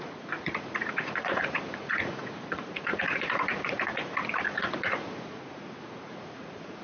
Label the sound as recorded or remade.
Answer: remade